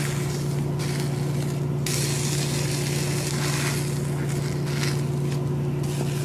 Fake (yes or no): no